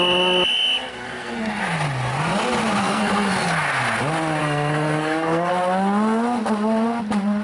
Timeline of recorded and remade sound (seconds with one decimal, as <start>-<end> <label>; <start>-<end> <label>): 0.0-0.9 recorded; 0.9-1.6 remade; 1.6-2.8 recorded; 2.8-3.3 remade; 3.3-4.4 recorded; 4.4-5.5 remade; 5.5-7.4 recorded